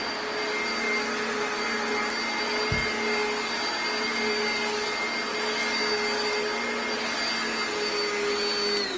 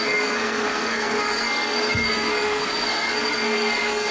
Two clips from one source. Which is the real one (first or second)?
first